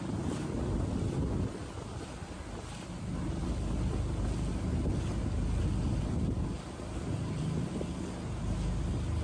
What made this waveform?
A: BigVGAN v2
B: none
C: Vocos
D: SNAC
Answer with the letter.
B